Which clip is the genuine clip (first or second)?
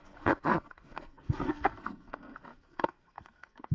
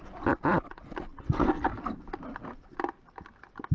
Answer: second